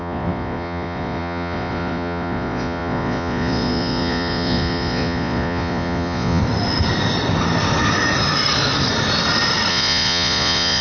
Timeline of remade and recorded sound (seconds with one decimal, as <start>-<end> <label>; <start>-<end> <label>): 0.0-6.4 remade; 6.4-9.7 recorded; 9.7-10.8 remade